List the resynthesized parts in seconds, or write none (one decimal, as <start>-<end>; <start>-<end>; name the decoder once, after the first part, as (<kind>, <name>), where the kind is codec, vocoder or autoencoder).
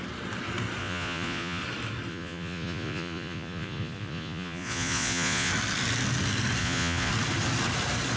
0.8-1.6 (vocoder, Vocos); 2.1-5.5; 6.6-7.1